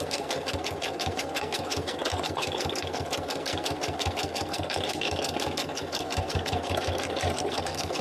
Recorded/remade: remade